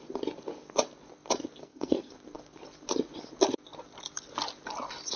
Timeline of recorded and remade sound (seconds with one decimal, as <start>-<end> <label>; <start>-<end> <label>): 0.0-1.6 recorded; 1.6-2.1 remade; 2.1-5.2 recorded